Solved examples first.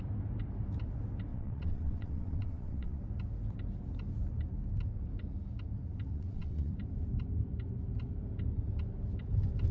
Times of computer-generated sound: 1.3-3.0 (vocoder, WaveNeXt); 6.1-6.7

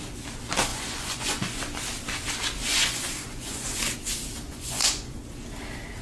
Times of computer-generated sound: 0.7-1.6 (vocoder, Vocos); 2.7-3.8; 4.5-5.2